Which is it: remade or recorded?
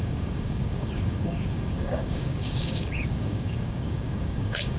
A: remade